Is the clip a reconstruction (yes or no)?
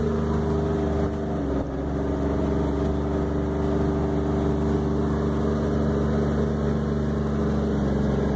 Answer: no